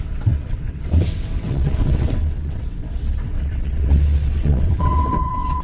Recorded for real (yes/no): no